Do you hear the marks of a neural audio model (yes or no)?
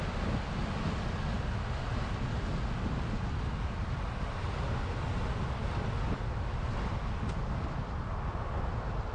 no